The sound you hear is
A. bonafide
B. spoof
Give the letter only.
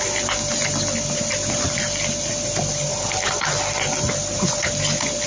A